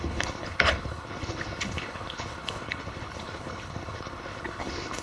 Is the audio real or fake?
fake